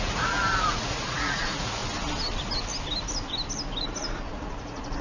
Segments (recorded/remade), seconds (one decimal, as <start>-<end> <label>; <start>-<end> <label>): 0.0-1.8 remade; 1.8-4.3 recorded; 4.3-5.0 remade